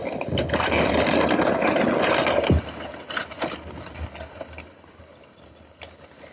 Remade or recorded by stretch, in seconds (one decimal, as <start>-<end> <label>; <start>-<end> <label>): 0.0-6.3 recorded